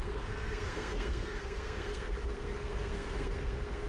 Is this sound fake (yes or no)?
yes